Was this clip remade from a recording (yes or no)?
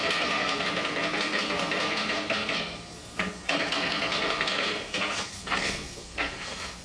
yes